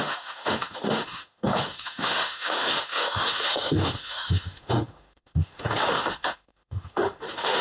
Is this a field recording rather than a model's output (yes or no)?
no